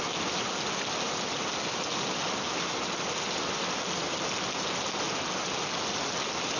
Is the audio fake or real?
real